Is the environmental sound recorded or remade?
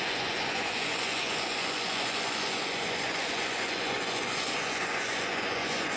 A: remade